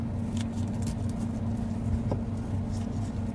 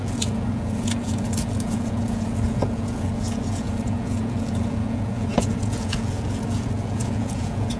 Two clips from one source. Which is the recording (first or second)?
first